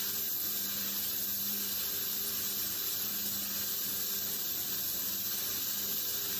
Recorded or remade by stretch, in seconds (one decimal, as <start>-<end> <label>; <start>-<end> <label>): 0.0-3.1 remade; 3.1-5.9 recorded; 5.9-6.4 remade